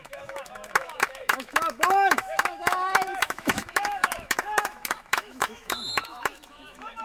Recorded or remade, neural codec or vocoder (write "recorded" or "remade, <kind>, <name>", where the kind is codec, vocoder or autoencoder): remade, autoencoder, DAC-VAE